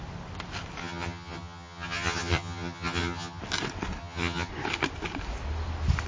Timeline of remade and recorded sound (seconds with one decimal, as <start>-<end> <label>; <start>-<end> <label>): 0.0-0.8 recorded; 0.8-3.4 remade; 3.4-4.0 recorded; 4.0-4.5 remade; 4.5-6.1 recorded